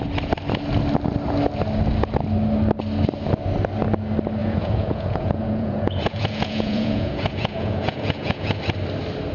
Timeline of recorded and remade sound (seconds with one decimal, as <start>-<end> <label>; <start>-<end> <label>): 0.0-4.4 recorded; 4.4-8.6 remade; 8.6-9.3 recorded